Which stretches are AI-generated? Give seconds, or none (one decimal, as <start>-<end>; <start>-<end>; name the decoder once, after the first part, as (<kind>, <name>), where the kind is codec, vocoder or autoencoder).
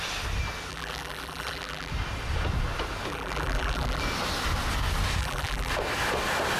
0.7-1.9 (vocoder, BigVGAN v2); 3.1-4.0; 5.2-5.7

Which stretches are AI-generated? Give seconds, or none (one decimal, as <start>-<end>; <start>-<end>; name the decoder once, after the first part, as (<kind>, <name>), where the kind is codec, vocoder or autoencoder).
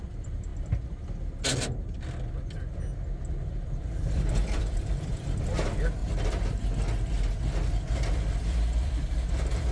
0.0-0.5 (vocoder, BigVGAN v2); 3.3-6.0; 8.3-9.7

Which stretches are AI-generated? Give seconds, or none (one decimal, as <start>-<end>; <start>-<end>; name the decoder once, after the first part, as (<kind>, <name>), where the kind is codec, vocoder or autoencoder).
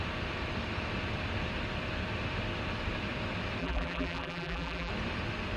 3.6-4.9 (vocoder, BigVGAN v2)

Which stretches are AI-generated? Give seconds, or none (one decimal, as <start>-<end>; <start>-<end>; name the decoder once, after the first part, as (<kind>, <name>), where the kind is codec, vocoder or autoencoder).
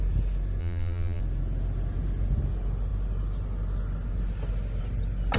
0.6-1.2 (vocoder, BigVGAN v2)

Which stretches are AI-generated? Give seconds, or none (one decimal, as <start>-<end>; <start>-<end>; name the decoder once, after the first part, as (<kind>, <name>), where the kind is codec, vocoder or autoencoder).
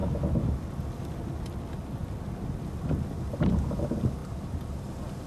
none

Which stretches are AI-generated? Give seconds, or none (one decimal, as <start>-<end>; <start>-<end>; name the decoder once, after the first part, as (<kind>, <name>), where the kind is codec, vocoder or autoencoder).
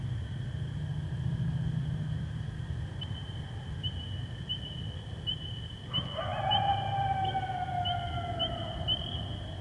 5.3-5.8 (vocoder, BigVGAN v2)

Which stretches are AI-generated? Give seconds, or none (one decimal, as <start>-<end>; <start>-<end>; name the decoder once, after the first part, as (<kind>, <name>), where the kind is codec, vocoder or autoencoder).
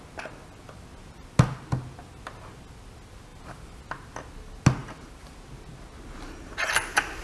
3.3-3.8 (vocoder, BigVGAN v2); 4.8-5.3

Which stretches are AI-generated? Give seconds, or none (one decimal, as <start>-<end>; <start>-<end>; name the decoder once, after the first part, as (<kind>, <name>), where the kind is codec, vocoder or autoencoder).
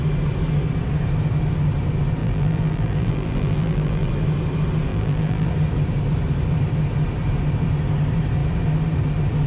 2.2-4.1 (vocoder, BigVGAN v2); 4.9-5.5